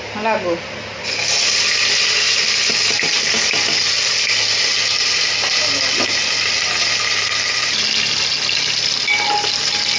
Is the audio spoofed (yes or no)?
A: no